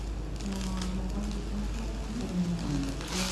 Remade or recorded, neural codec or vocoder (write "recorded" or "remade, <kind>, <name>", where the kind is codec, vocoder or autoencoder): recorded